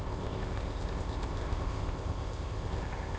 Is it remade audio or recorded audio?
remade